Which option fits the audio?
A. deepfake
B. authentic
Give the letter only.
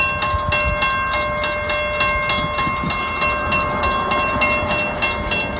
B